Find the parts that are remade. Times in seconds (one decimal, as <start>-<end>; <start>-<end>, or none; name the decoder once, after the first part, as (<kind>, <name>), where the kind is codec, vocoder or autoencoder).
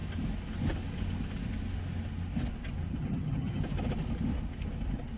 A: 3.0-3.6 (vocoder, HiFi-GAN)